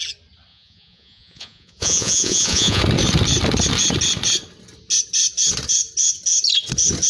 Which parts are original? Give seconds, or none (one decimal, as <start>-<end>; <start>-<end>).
0.0-0.5; 2.8-7.1